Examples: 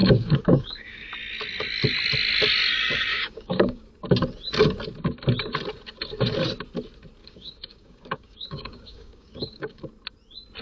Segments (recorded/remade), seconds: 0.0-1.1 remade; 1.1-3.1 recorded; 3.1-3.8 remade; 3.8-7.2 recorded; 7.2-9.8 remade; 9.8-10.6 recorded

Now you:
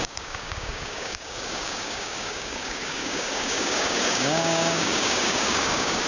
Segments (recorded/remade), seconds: 0.0-6.1 remade

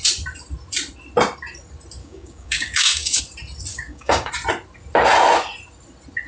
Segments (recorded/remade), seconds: 0.0-2.0 recorded; 2.0-3.2 remade; 3.2-3.7 recorded; 3.7-4.3 remade; 4.3-6.3 recorded

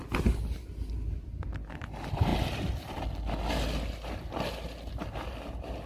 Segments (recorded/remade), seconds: 0.0-5.9 recorded

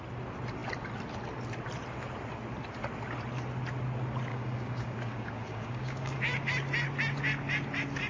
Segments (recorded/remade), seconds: 0.0-4.3 recorded; 4.3-6.2 remade; 6.2-8.1 recorded